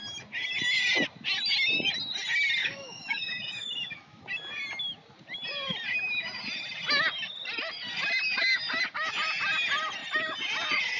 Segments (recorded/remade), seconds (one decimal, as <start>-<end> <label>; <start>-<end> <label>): 0.0-2.6 recorded; 2.6-4.2 remade; 4.2-11.0 recorded